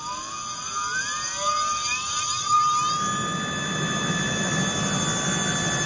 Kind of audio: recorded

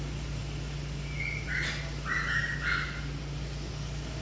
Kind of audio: recorded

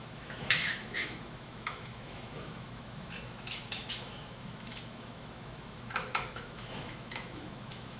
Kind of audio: remade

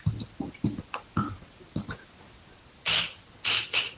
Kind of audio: recorded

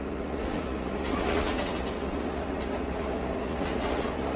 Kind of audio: remade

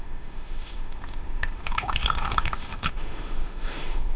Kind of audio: remade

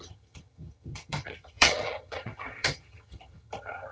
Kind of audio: remade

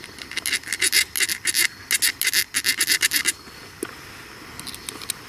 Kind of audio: recorded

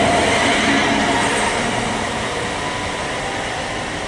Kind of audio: recorded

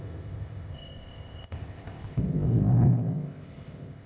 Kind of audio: remade